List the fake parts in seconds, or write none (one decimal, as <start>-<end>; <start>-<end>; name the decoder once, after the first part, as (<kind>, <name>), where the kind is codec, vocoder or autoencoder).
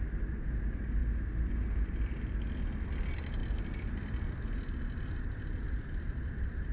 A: none